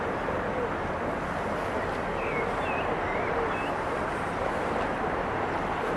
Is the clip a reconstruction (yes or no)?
no